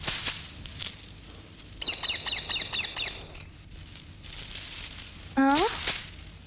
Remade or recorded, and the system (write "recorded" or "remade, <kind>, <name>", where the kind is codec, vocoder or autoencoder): recorded